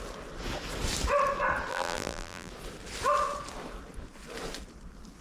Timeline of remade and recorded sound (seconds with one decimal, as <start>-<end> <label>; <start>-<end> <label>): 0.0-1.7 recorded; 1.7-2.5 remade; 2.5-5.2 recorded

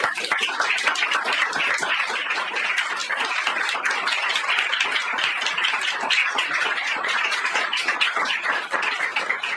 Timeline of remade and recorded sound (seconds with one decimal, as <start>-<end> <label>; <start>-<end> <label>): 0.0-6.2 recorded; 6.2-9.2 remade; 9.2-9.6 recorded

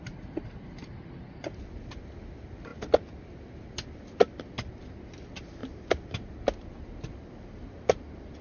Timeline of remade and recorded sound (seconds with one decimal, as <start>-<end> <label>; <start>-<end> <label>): 0.0-8.4 recorded